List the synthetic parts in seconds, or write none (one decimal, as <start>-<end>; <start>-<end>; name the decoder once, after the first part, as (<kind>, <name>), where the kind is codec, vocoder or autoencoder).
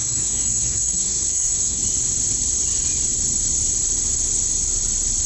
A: 0.0-1.8 (codec, SNAC)